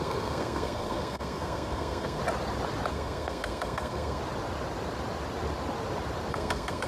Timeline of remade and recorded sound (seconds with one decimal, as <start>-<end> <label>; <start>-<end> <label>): 0.0-2.2 remade; 2.2-2.9 recorded; 2.9-4.2 remade; 4.2-6.3 recorded; 6.3-6.9 remade